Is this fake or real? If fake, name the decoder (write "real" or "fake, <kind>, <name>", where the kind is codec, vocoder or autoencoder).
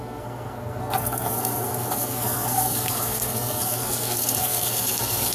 fake, codec, SNAC